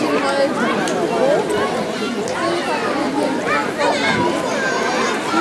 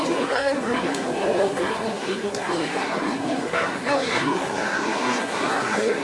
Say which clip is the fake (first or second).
second